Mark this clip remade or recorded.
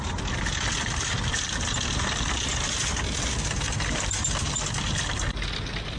recorded